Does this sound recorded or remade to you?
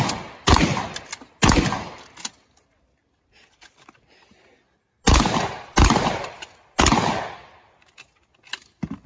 recorded